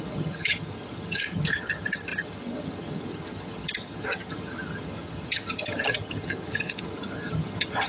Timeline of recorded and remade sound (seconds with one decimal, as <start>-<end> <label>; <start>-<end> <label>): 0.0-7.9 remade